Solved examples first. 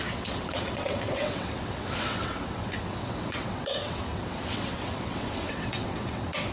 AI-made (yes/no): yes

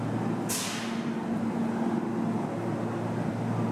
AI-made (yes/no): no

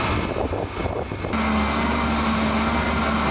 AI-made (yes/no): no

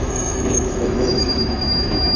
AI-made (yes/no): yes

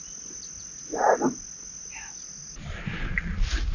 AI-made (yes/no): no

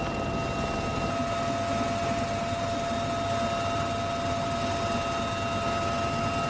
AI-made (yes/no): no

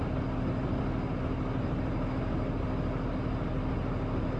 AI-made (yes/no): no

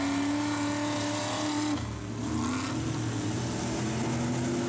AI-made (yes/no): no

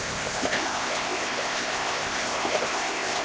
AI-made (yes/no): yes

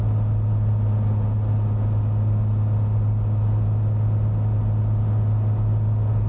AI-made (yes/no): no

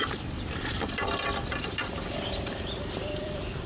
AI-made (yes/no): yes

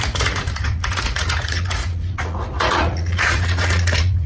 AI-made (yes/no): yes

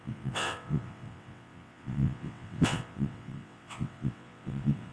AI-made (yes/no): yes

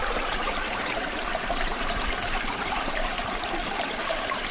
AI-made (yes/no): yes